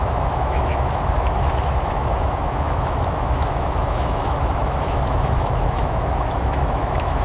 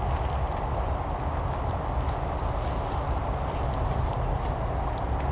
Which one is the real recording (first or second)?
second